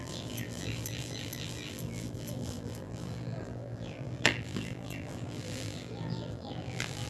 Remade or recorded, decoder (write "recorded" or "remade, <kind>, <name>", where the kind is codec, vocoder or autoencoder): remade, vocoder, BigVGAN v2